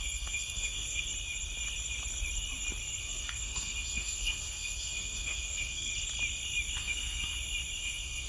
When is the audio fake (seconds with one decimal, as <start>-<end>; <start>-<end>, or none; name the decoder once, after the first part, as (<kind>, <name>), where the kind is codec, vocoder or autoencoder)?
0.0-1.1 (codec, SNAC); 3.0-5.9; 6.8-7.3; 7.8-8.3

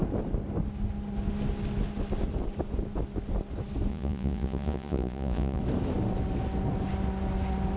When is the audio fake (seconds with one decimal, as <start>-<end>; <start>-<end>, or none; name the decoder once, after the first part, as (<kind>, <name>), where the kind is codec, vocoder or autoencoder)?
3.9-5.6 (vocoder, Vocos)

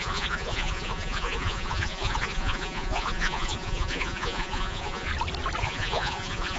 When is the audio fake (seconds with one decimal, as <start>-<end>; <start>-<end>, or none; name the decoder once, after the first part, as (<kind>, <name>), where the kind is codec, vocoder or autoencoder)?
0.0-5.1 (vocoder, Vocos); 5.6-6.6

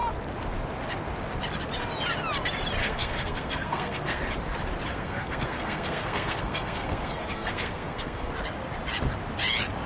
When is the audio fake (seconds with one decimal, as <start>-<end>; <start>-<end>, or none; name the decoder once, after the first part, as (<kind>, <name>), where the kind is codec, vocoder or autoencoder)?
2.8-4.2 (codec, SNAC); 4.9-8.3

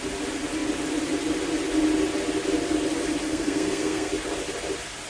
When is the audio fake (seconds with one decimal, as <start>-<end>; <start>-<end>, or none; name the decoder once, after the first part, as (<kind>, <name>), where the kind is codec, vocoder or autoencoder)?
3.2-4.1 (codec, SNAC)

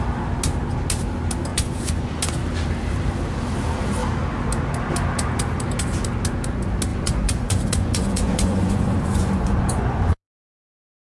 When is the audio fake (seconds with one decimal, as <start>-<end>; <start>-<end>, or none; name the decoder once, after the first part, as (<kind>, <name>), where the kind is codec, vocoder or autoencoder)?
1.5-2.2 (vocoder, Vocos); 6.9-11.1

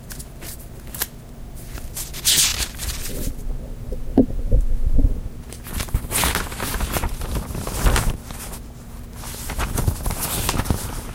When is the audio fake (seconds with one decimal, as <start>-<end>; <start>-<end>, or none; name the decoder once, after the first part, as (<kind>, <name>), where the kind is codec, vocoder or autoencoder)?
none